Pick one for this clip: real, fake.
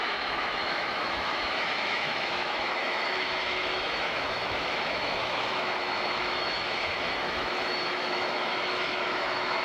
fake